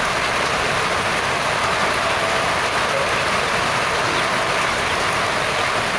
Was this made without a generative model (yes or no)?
yes